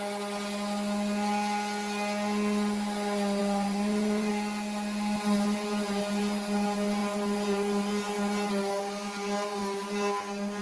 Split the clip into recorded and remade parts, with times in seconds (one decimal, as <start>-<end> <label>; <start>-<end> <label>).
0.0-3.4 recorded; 3.4-4.3 remade; 4.3-10.6 recorded